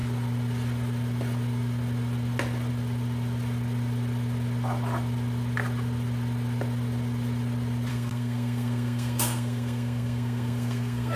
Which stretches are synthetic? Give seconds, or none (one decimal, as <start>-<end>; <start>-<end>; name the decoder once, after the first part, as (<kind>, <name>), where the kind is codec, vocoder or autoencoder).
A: 7.9-11.2 (codec, SNAC)